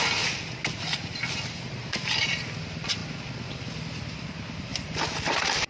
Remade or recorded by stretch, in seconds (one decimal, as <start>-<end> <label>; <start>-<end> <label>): 0.0-1.1 recorded; 1.1-2.4 remade; 2.4-4.7 recorded; 4.7-5.7 remade

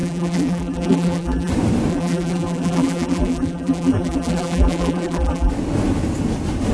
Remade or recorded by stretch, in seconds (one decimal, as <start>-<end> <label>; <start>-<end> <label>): 0.0-1.5 remade; 1.5-1.9 recorded; 1.9-5.5 remade; 5.5-6.7 recorded